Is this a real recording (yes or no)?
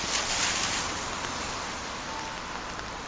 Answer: yes